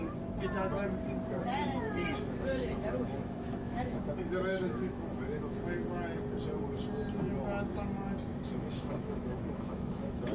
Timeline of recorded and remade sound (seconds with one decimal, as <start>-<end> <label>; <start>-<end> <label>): 0.0-2.0 recorded; 2.0-4.1 remade; 4.1-4.5 recorded; 4.5-5.6 remade; 5.6-8.3 recorded; 8.3-10.3 remade